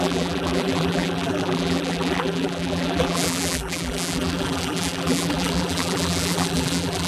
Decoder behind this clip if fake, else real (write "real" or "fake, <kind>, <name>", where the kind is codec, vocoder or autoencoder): fake, vocoder, BigVGAN v2